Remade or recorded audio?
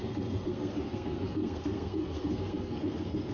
remade